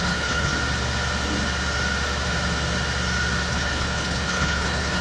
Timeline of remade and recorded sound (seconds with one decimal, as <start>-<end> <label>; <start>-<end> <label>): 0.0-0.5 remade; 0.5-3.5 recorded; 3.5-5.0 remade